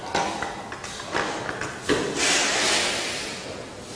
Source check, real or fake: real